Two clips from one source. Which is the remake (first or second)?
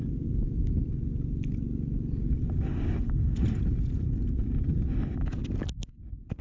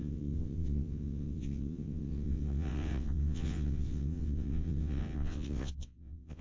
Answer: second